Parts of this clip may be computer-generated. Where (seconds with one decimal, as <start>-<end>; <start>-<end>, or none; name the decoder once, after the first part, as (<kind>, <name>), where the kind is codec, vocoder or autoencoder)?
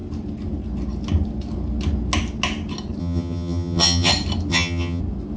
3.0-4.1 (vocoder, HiFi-GAN); 4.5-5.0